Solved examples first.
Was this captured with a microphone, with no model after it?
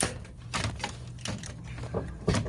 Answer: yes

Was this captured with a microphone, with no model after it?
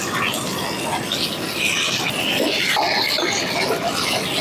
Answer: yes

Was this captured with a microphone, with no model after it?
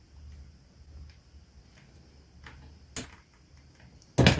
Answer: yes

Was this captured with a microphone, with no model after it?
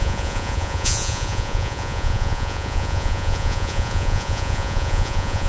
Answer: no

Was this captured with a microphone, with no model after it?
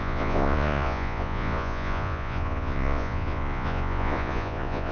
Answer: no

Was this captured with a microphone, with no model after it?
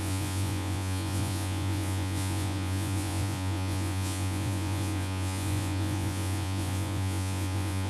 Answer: no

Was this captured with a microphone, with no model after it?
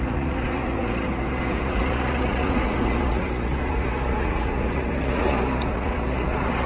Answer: no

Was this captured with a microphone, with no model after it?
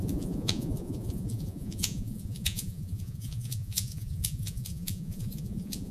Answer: no